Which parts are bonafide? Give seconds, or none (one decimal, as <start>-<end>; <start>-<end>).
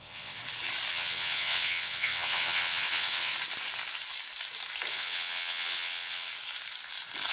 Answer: 0.4-0.9; 3.3-4.9; 6.3-7.3